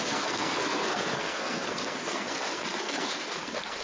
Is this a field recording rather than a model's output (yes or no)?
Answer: no